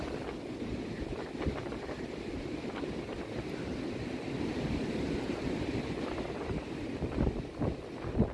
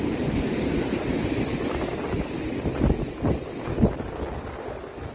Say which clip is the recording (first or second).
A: second